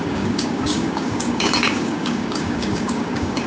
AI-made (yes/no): yes